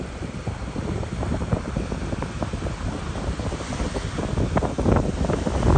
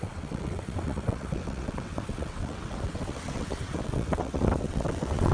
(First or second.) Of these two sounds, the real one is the first